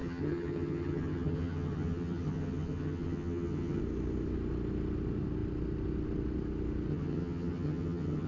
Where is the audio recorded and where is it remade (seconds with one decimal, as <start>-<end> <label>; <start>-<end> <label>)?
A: 0.0-3.8 remade; 3.8-6.9 recorded; 6.9-8.3 remade